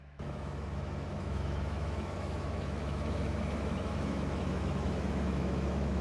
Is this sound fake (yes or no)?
yes